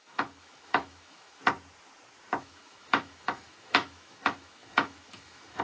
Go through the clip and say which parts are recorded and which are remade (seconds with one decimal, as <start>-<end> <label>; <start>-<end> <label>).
0.0-1.4 remade; 1.4-2.4 recorded; 2.4-5.6 remade